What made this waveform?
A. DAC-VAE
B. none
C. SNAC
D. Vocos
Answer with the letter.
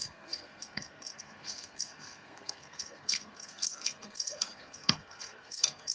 C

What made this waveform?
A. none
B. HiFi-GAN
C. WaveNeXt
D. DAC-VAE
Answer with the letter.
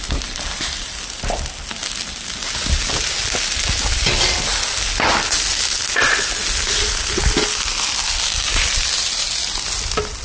A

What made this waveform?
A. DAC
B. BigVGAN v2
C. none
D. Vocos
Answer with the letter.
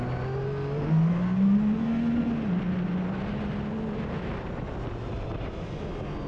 C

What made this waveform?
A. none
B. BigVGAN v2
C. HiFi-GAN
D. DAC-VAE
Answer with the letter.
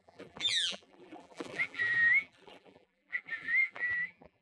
B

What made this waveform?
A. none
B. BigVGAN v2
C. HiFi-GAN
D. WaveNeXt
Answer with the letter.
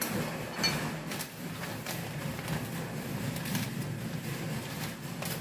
A